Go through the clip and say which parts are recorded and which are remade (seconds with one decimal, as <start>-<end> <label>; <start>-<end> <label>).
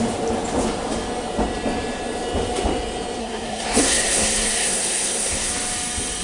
0.0-3.2 recorded; 3.2-5.5 remade; 5.5-6.2 recorded